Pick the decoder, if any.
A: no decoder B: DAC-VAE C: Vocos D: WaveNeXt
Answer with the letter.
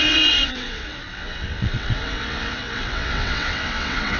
D